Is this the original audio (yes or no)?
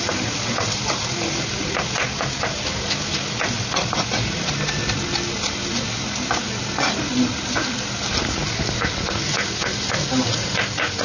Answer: yes